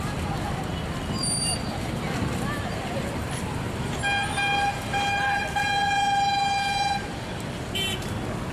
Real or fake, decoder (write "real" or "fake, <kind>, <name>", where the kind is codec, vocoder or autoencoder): real